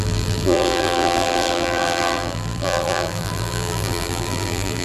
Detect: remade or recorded remade